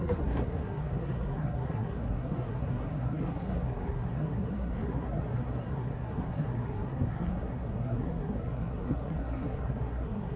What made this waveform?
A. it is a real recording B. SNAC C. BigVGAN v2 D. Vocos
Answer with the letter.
B